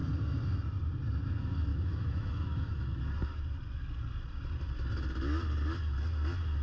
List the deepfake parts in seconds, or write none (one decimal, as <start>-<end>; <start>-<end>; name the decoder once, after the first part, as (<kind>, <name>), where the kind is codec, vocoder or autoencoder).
1.7-3.0 (autoencoder, DAC-VAE)